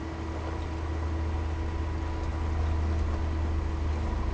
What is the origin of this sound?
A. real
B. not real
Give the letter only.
A